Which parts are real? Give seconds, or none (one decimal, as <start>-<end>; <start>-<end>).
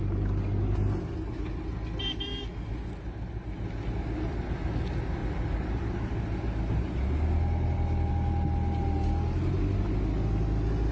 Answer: 0.0-10.9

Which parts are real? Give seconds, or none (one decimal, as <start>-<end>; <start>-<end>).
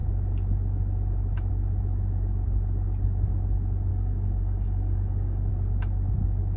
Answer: 0.0-3.9; 5.5-6.6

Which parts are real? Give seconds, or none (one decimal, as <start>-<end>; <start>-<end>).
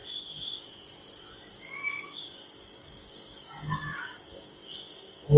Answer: 0.0-1.6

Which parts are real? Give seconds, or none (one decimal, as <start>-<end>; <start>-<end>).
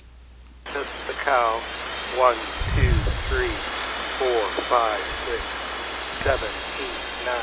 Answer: 0.0-7.4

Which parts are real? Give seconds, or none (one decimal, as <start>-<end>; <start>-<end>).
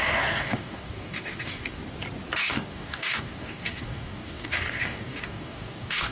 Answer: 1.8-2.4